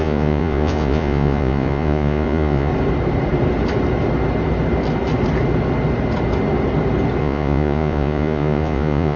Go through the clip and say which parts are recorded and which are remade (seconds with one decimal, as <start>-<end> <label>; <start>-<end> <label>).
0.0-2.7 remade; 2.7-7.2 recorded; 7.2-9.2 remade